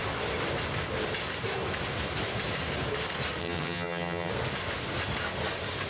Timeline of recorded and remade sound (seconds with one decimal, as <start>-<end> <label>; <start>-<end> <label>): 0.0-3.4 recorded; 3.4-4.3 remade; 4.3-5.9 recorded